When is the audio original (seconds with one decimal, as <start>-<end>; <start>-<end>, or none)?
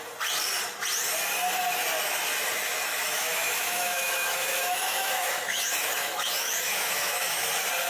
0.0-2.9; 7.5-7.9